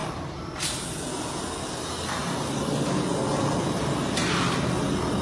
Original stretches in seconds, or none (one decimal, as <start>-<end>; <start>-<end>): 0.6-2.2; 3.4-5.2